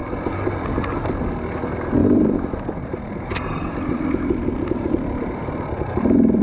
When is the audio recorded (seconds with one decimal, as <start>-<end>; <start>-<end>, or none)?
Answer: 0.0-2.0; 5.6-6.4